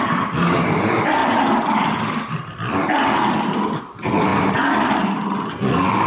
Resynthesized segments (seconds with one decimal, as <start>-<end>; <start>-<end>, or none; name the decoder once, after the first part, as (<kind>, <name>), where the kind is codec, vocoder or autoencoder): none